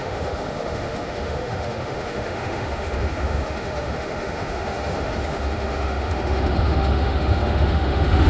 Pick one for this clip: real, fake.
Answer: fake